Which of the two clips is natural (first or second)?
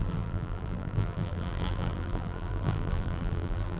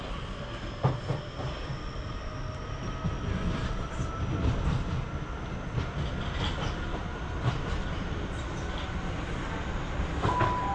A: second